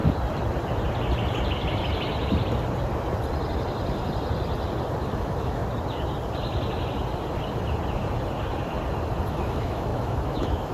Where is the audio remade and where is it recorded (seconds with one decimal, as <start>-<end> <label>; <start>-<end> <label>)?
0.0-5.0 recorded; 5.0-5.6 remade; 5.6-9.3 recorded; 9.3-10.7 remade